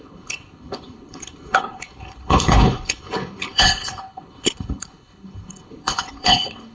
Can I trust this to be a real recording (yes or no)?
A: no